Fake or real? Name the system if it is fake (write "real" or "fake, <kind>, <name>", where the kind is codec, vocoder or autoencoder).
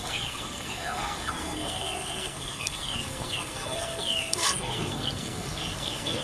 fake, codec, SNAC